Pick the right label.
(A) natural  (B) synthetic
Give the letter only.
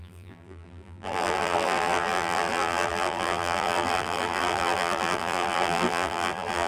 B